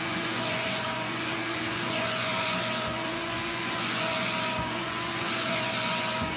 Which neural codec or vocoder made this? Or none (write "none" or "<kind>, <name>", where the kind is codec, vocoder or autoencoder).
vocoder, Vocos